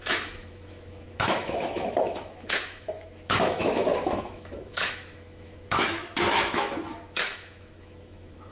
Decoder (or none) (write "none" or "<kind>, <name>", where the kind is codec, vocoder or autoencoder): autoencoder, DAC-VAE